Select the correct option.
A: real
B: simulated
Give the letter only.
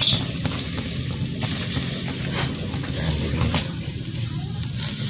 A